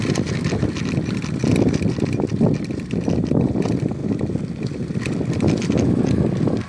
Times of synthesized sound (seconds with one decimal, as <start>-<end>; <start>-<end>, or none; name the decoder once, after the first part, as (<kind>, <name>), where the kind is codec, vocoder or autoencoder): 1.5-3.6 (vocoder, BigVGAN v2); 4.0-4.8